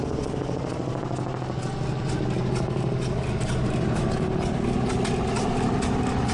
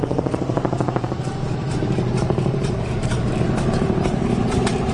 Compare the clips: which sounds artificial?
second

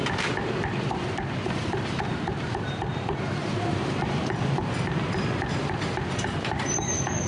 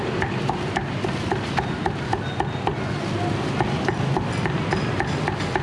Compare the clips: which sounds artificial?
first